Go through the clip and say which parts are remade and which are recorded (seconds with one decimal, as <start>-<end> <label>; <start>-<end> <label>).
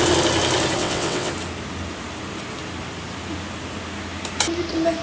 0.0-0.8 recorded; 0.8-1.3 remade; 1.3-5.0 recorded